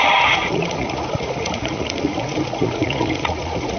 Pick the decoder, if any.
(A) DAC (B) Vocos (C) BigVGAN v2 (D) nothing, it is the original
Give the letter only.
B